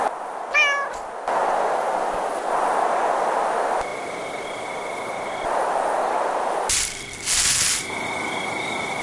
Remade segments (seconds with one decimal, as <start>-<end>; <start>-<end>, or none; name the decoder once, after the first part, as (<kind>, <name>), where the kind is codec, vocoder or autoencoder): none